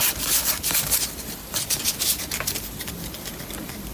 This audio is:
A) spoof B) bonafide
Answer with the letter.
A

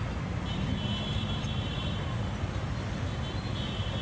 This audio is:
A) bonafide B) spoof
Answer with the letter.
A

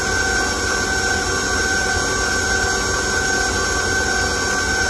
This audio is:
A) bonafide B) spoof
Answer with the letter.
A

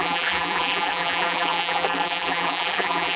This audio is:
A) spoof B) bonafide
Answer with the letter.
A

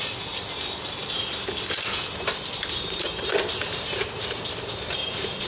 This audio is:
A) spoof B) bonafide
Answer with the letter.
B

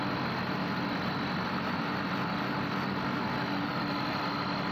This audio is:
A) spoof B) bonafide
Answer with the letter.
B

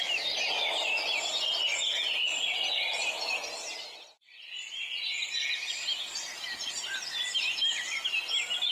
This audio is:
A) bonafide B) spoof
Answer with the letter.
A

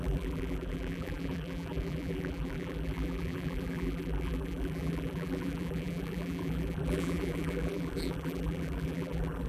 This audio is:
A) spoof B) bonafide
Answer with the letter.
A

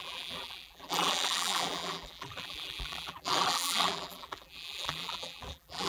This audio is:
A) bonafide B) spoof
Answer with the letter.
B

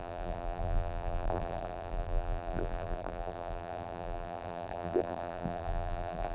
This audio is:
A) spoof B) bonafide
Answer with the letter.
A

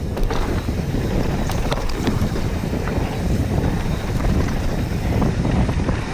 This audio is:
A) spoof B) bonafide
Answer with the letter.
A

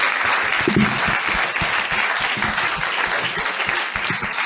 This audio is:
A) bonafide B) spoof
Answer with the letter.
A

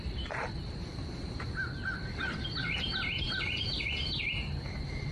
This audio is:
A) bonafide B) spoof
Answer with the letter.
B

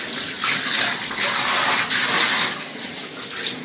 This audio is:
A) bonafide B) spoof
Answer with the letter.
A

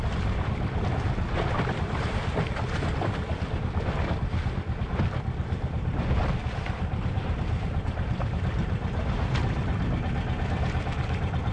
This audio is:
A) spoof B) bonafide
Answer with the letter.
B